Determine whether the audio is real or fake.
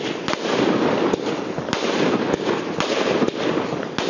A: real